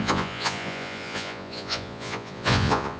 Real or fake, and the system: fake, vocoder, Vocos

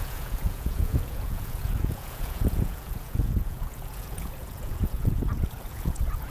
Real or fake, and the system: fake, vocoder, Vocos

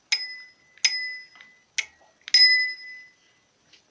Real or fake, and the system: real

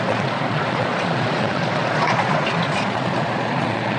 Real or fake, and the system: fake, vocoder, Vocos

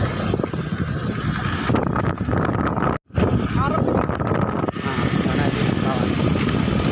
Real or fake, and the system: real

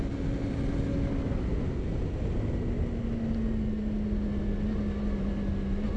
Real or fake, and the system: real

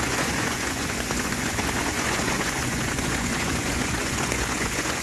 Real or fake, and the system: fake, vocoder, Vocos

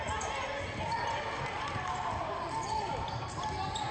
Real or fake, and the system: real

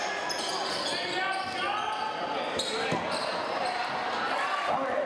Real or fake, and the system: real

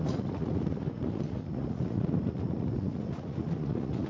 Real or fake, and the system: fake, vocoder, Vocos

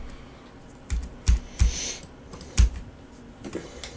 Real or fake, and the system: real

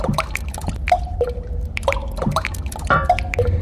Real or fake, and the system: real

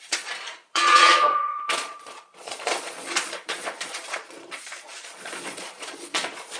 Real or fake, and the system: fake, vocoder, Vocos